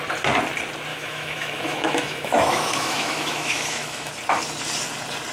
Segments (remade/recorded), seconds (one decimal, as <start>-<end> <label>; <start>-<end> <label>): 0.0-0.9 recorded; 0.9-4.1 remade; 4.1-5.3 recorded